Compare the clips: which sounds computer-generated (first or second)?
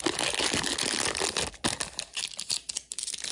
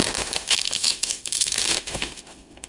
second